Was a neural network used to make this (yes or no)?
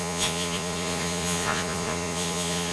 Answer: yes